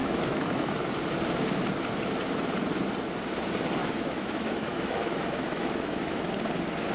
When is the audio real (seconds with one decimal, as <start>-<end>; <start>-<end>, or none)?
0.7-3.8; 6.3-6.9